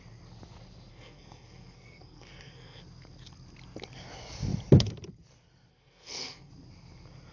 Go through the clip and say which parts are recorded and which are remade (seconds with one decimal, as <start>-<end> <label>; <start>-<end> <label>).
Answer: 0.0-0.9 recorded; 0.9-2.8 remade; 2.8-5.7 recorded; 5.7-6.5 remade; 6.5-7.3 recorded